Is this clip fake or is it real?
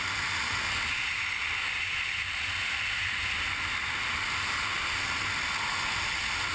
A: real